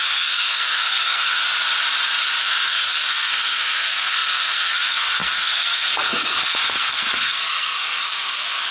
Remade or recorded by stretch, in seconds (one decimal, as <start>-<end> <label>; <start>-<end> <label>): 0.0-1.4 remade; 1.4-2.4 recorded; 2.4-8.7 remade